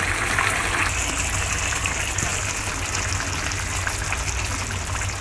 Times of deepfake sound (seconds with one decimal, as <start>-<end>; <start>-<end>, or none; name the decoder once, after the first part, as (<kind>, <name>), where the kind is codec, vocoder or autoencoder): 0.0-0.6 (vocoder, BigVGAN v2); 1.5-2.3